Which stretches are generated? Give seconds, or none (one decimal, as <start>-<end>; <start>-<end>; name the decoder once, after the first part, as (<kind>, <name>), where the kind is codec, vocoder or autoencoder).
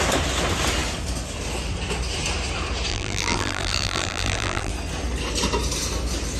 2.9-4.7 (vocoder, BigVGAN v2)